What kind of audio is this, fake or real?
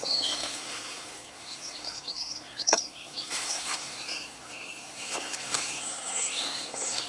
fake